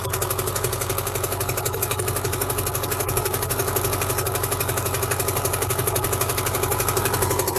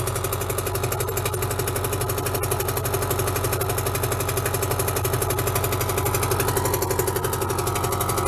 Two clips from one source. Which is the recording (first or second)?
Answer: second